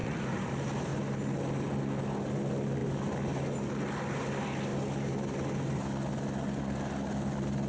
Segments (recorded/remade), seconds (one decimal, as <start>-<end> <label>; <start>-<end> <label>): 0.0-0.5 remade; 0.5-7.7 recorded